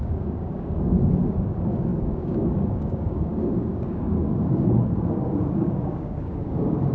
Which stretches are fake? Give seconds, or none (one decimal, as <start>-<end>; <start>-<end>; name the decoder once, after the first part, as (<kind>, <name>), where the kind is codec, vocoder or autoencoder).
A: 0.0-6.9 (codec, DAC)